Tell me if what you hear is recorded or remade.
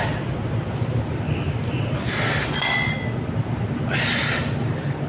recorded